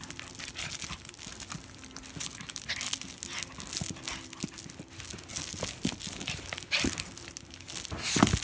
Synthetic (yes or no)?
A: no